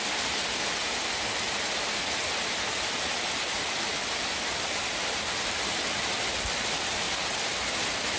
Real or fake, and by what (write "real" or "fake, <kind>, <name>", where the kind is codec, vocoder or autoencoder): real